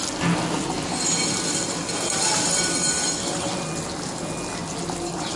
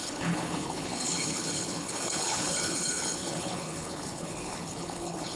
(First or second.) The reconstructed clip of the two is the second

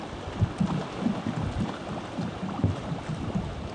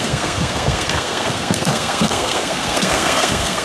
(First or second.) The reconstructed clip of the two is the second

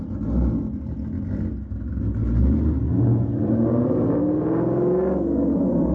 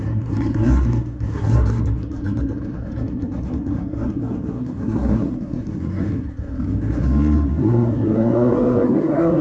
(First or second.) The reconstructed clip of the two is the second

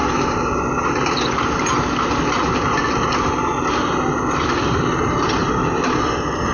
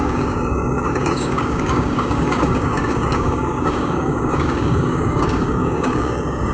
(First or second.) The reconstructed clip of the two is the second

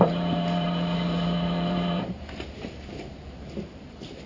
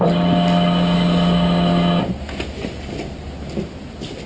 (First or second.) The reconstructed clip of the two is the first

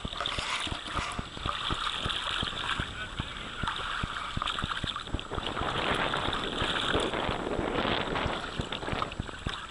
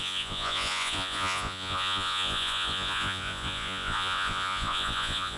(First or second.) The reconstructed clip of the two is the second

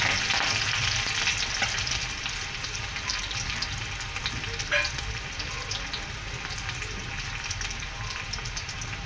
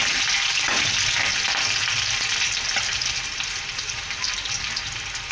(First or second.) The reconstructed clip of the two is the second